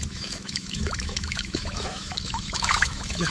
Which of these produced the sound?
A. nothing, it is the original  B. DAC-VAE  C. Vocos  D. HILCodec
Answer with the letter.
B